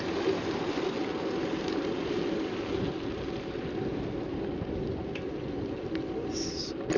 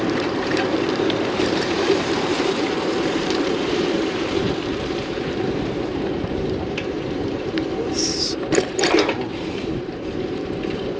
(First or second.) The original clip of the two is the first